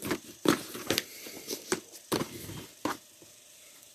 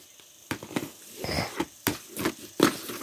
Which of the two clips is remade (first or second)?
first